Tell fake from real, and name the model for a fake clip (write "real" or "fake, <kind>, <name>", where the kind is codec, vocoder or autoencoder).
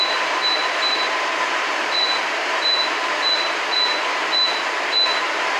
fake, vocoder, BigVGAN v2